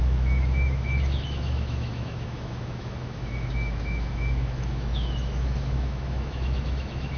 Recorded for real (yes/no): no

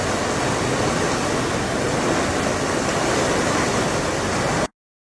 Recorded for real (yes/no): yes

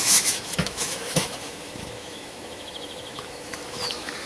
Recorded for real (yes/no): no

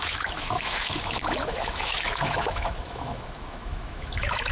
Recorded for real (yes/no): no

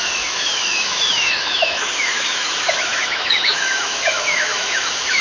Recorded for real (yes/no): no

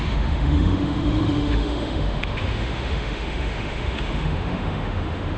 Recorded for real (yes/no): no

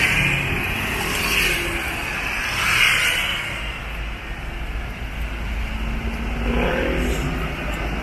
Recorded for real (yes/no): yes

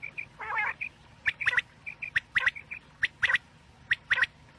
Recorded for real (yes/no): yes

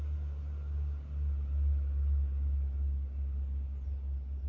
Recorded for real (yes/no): yes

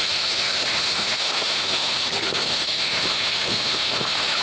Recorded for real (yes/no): no